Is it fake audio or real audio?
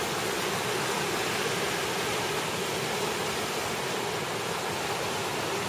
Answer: real